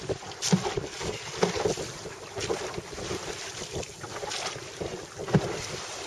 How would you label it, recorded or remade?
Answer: recorded